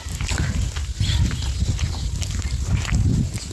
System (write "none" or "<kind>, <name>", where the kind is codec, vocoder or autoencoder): none